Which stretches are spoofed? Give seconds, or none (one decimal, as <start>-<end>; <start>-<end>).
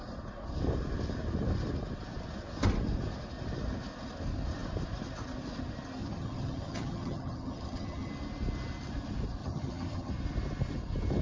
6.0-8.1; 9.4-10.1